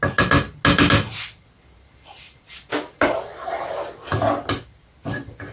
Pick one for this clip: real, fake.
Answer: real